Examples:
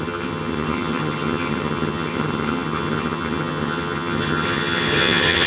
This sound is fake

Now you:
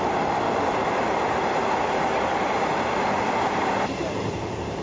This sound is real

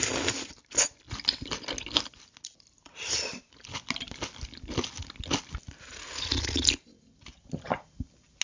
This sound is real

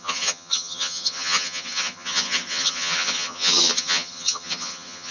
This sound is fake